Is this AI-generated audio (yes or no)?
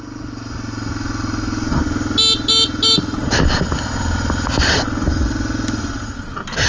no